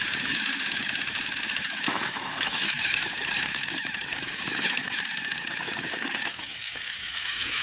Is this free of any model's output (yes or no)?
no